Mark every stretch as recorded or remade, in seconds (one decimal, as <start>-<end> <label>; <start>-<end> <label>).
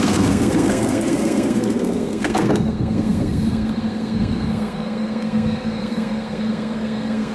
0.0-7.3 remade